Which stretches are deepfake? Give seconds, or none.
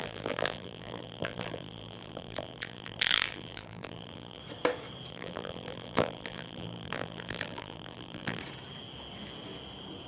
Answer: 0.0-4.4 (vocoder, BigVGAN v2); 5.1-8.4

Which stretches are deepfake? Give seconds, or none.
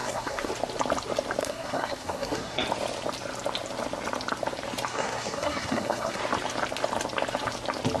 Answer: 0.0-0.5 (codec, SNAC); 1.4-2.6; 4.9-6.2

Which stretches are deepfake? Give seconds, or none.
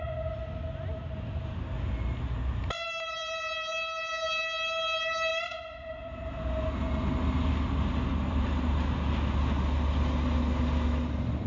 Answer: 5.3-5.9 (vocoder, BigVGAN v2); 8.1-8.7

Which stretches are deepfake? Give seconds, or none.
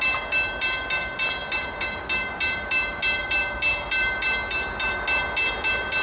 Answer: none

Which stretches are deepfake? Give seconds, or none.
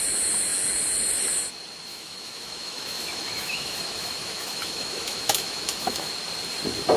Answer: 1.9-6.1 (autoencoder, DAC-VAE)